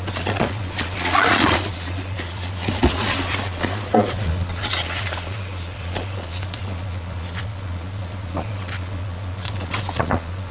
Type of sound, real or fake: fake